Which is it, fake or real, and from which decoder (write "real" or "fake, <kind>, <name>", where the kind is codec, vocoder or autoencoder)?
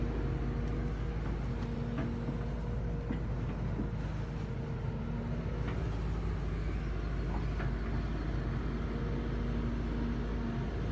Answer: real